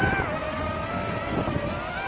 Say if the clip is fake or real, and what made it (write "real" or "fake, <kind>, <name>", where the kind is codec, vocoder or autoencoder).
real